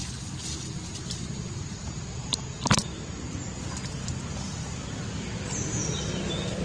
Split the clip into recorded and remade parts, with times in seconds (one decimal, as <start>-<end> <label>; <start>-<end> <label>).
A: 0.0-0.9 recorded; 0.9-2.9 remade; 2.9-6.6 recorded